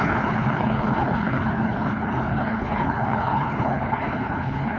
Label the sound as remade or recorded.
remade